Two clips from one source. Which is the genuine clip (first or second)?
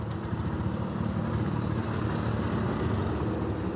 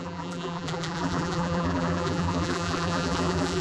first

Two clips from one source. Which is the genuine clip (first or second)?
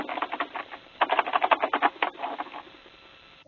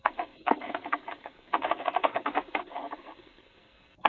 first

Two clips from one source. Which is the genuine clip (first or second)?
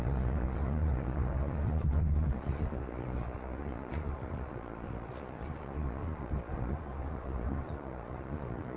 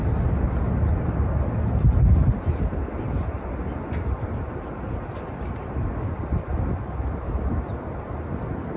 second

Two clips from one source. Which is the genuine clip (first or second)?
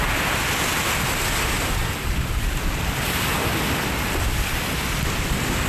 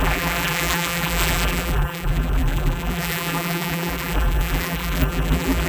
first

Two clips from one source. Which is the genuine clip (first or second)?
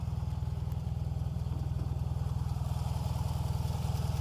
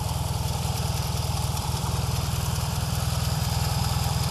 first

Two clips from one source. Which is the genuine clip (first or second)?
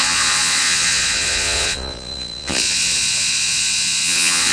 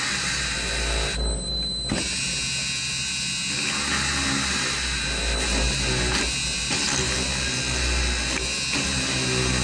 second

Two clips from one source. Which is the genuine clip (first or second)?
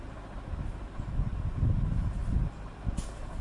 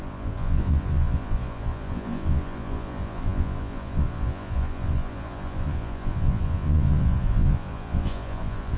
first